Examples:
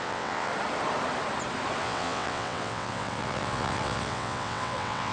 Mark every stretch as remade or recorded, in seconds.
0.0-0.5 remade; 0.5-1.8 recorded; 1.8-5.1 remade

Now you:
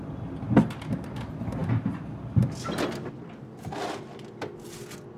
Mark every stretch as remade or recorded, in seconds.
0.0-5.2 recorded

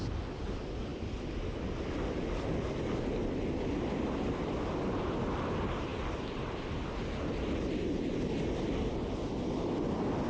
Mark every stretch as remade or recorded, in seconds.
0.0-10.3 recorded

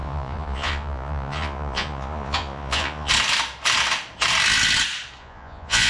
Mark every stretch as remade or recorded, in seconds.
0.0-3.1 remade; 3.1-5.2 recorded; 5.2-5.9 remade

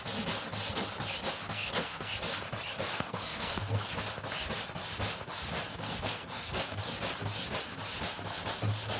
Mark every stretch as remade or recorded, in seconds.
0.0-1.5 recorded; 1.5-2.1 remade; 2.1-2.9 recorded; 2.9-3.9 remade; 3.9-5.7 recorded; 5.7-6.8 remade; 6.8-9.0 recorded

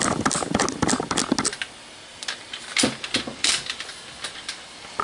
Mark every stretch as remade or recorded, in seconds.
0.0-2.1 recorded; 2.1-2.8 remade; 2.8-3.3 recorded; 3.3-4.0 remade; 4.0-5.0 recorded